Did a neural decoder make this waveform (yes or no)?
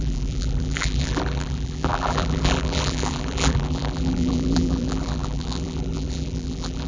yes